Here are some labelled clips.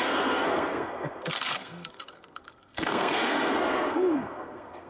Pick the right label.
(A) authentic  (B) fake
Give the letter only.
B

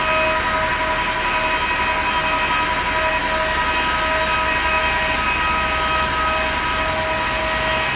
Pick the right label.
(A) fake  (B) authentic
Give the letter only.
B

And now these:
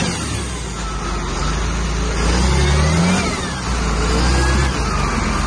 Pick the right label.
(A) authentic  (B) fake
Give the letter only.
A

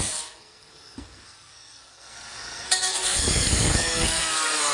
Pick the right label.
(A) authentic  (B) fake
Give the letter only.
B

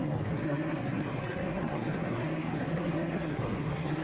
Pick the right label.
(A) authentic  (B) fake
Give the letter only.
B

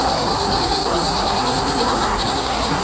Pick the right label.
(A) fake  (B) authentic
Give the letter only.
A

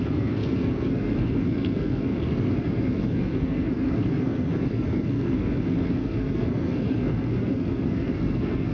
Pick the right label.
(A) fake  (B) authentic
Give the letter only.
A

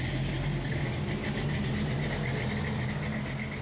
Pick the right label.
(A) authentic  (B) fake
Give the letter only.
A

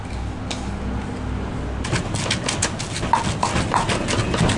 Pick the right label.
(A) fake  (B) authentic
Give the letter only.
B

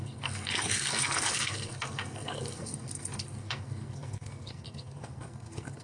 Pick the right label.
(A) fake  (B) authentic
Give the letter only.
A